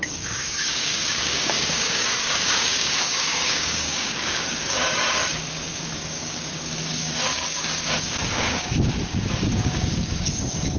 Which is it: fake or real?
fake